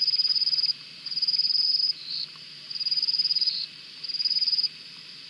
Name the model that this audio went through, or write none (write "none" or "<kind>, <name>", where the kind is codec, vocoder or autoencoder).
vocoder, BigVGAN v2